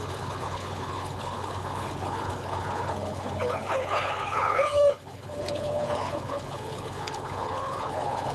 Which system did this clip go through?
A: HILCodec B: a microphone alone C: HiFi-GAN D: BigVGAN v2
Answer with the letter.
A